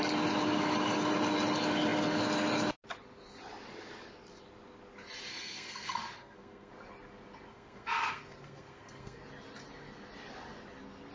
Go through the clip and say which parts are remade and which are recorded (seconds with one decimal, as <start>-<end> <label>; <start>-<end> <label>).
0.0-5.3 recorded; 5.3-6.7 remade; 6.7-7.5 recorded; 7.5-9.2 remade; 9.2-11.1 recorded